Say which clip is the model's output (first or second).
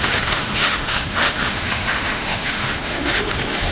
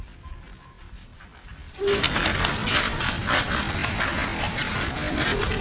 first